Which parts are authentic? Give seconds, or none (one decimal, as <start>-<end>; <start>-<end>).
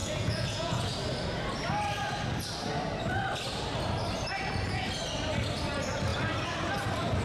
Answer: 0.9-7.2